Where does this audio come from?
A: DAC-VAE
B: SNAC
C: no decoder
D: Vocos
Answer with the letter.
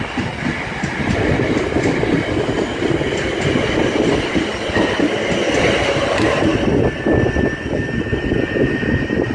C